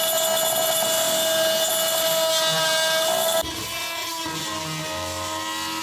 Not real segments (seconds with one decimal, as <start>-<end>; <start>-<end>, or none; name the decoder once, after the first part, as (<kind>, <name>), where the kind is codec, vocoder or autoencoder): none